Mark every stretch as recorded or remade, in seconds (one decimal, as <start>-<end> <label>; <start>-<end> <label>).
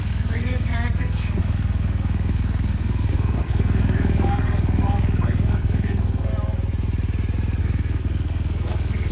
0.0-6.3 remade; 6.3-7.6 recorded; 7.6-9.1 remade